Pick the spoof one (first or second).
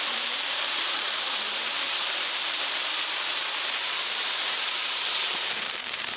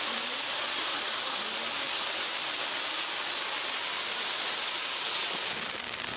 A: first